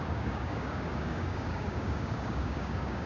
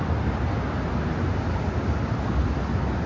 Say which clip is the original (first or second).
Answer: second